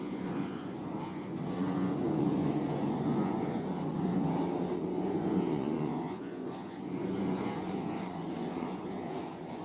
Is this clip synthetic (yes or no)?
yes